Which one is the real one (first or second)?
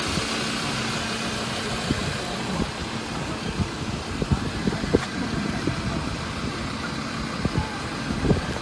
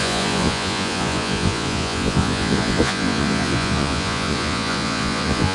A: first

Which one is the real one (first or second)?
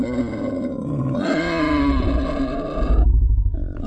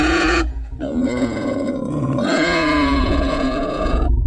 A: first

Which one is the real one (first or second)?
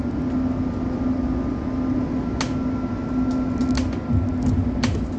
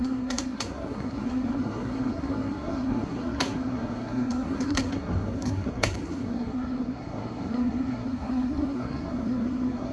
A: first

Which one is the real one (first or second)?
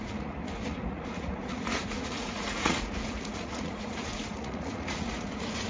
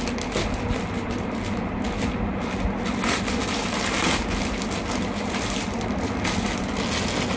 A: second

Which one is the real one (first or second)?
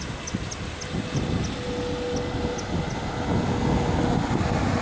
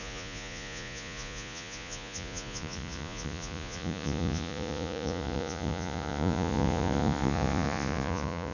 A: first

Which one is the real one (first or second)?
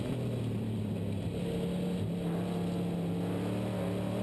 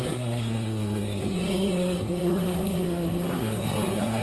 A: first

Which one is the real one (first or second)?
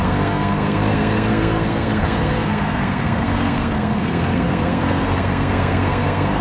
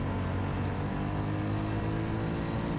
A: second